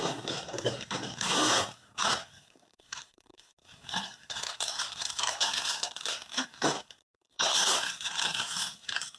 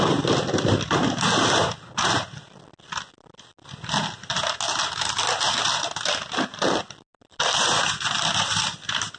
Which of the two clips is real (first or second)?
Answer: second